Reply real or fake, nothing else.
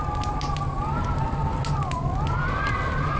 real